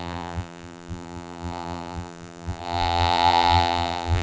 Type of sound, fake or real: fake